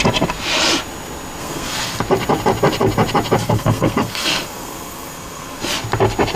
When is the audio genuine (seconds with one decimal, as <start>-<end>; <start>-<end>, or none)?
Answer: 0.0-1.4; 2.0-3.4; 5.6-6.4